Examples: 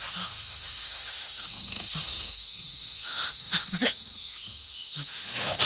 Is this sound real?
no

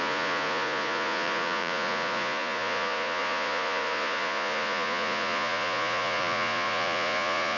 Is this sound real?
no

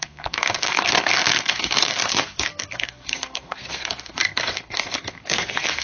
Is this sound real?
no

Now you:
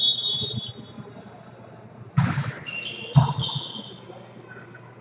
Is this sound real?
yes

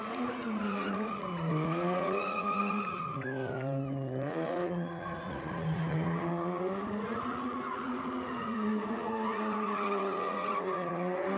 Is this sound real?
no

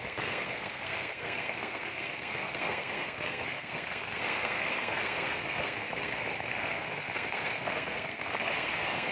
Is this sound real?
no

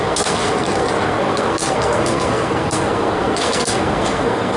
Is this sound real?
no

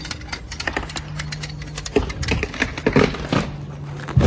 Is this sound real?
yes